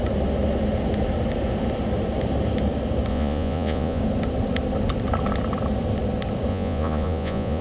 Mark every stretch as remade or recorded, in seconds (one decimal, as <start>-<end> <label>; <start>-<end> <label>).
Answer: 0.0-3.1 recorded; 3.1-4.0 remade; 4.0-6.5 recorded; 6.5-7.6 remade

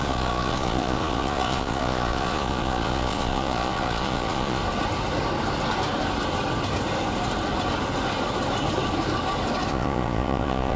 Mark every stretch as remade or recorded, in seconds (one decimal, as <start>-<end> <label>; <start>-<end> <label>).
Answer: 0.0-4.6 remade; 4.6-9.7 recorded; 9.7-10.8 remade

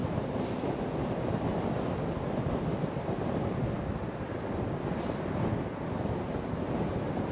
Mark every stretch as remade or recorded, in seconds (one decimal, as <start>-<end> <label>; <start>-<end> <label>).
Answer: 0.0-7.3 recorded

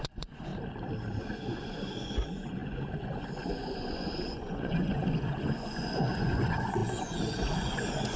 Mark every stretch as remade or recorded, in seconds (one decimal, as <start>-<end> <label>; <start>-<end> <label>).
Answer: 0.0-0.5 remade; 0.5-1.2 recorded; 1.2-8.2 remade